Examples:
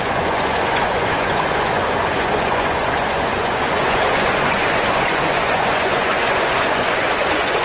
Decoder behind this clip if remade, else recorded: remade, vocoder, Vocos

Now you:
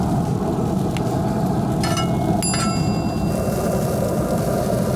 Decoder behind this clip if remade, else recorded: recorded